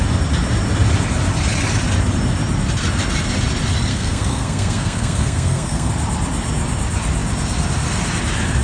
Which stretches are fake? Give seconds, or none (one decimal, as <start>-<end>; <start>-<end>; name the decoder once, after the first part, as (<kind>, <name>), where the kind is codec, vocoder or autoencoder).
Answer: 3.9-5.9 (codec, SNAC)